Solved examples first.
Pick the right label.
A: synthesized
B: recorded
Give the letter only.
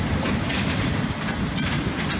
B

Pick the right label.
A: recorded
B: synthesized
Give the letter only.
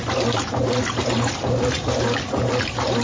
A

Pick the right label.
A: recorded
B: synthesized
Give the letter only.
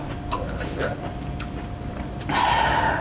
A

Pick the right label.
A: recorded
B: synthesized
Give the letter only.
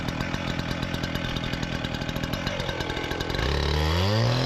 A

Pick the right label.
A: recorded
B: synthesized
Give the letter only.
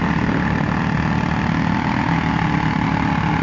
A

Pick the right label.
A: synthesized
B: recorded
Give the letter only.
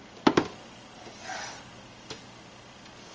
B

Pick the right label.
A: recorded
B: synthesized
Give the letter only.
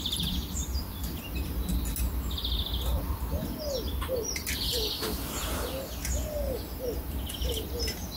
A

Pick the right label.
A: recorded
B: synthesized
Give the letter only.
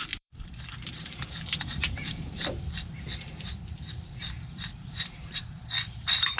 B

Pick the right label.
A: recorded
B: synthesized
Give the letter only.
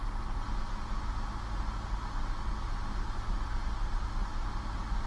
A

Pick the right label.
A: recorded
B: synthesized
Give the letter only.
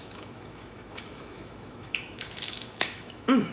B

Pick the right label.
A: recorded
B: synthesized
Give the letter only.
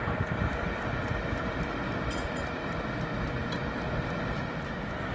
B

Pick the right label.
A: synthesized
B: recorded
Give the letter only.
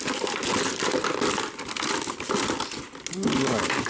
B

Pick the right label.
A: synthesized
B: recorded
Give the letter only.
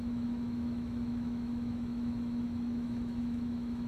A